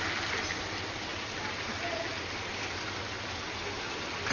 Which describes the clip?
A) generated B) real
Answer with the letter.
B